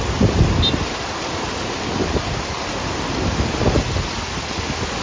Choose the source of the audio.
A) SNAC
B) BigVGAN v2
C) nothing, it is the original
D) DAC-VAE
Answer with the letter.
C